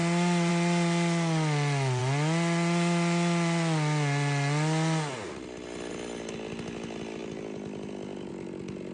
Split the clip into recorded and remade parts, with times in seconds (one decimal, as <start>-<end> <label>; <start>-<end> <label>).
0.0-8.9 recorded